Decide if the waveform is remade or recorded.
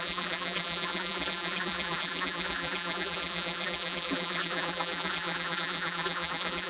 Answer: remade